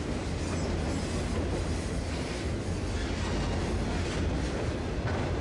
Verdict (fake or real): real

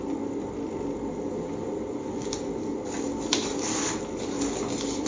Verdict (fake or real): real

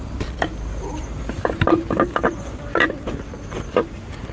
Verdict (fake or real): real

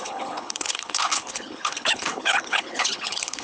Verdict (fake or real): fake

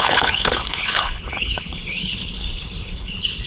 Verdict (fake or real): fake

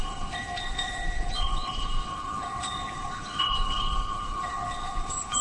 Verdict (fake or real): fake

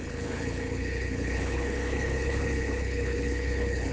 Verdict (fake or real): fake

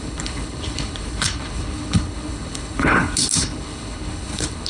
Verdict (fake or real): fake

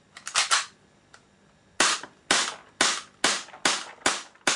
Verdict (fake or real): real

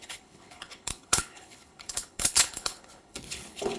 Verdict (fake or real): fake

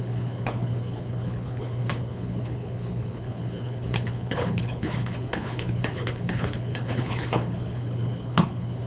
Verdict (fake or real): fake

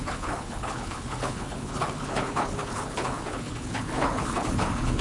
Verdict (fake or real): fake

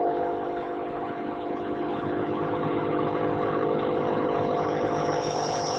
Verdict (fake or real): fake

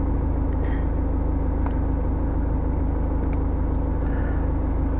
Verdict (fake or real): real